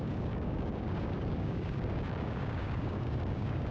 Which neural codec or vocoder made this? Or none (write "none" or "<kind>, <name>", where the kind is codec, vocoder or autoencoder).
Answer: codec, DAC